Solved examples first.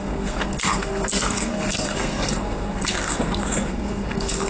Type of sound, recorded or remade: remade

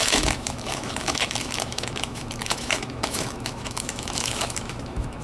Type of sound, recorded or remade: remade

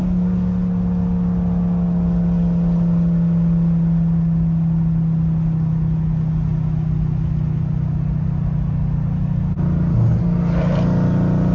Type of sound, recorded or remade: recorded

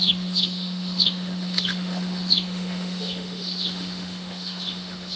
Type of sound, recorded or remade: remade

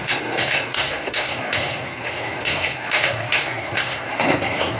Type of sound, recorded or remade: remade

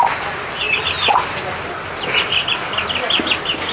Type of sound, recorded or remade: recorded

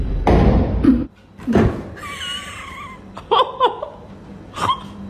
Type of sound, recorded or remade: recorded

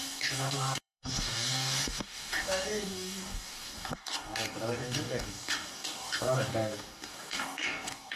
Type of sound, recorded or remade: remade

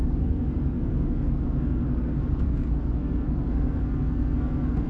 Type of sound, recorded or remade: remade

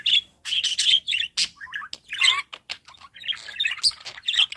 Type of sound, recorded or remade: recorded